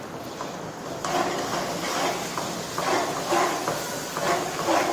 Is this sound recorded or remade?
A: recorded